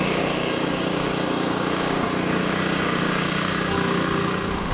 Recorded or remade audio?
remade